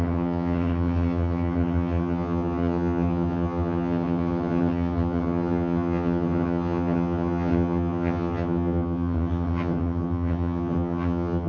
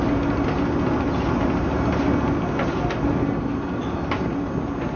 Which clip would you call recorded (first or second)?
second